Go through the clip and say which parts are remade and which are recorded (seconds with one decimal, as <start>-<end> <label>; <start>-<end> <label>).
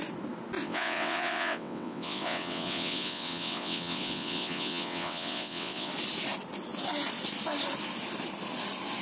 0.0-0.6 recorded; 0.6-5.9 remade; 5.9-9.0 recorded